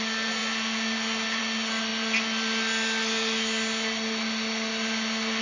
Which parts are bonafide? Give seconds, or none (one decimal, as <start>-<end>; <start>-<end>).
0.0-5.4